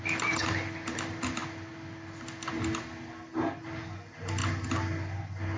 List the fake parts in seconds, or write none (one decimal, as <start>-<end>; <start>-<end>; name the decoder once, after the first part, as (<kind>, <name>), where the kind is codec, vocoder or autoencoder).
none